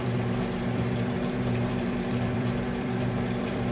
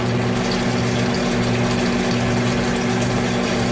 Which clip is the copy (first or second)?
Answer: first